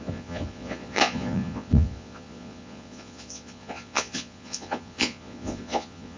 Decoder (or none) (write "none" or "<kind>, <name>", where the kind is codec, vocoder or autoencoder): vocoder, Vocos